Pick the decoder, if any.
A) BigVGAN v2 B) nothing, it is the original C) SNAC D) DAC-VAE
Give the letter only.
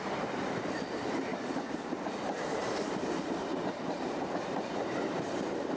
A